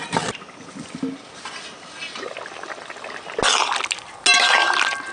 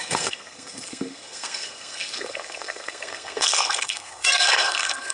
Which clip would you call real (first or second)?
first